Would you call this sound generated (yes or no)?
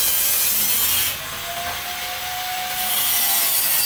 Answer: no